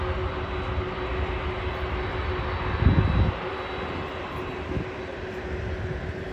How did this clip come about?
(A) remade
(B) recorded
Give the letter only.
B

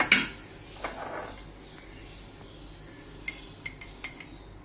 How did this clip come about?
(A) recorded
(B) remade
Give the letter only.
A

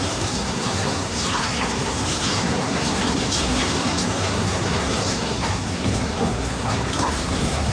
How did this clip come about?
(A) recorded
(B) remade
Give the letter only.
B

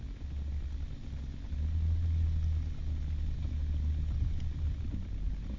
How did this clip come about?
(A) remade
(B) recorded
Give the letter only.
B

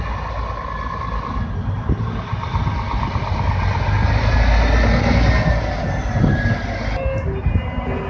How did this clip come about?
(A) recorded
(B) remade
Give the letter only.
A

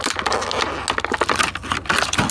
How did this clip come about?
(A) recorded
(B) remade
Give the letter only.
A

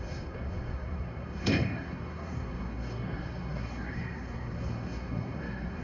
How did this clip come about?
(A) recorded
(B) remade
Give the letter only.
B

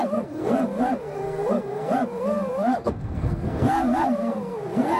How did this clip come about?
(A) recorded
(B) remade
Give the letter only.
B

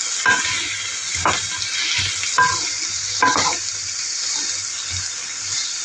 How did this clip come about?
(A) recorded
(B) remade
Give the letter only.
A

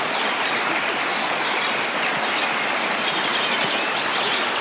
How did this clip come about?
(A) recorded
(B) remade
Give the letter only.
A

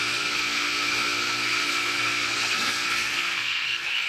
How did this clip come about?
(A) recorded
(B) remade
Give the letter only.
B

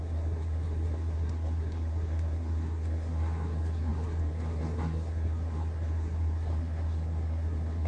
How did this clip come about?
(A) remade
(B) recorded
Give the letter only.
A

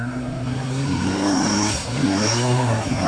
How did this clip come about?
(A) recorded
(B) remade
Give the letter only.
B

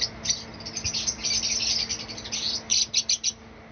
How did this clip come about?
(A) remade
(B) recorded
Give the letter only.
B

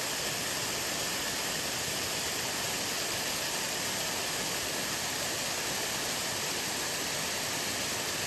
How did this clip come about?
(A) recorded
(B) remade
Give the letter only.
A